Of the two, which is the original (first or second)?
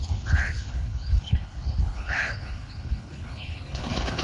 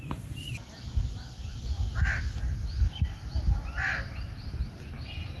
second